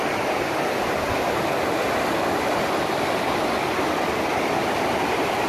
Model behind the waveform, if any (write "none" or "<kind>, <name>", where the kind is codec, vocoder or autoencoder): none